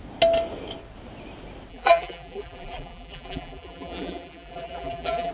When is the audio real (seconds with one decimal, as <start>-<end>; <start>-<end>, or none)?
0.0-1.7